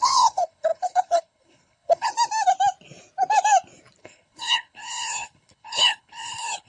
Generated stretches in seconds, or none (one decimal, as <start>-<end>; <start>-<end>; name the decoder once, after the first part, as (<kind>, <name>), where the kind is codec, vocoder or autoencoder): 0.0-2.1 (codec, HILCodec); 4.0-6.7